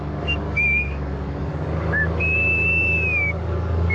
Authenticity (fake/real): fake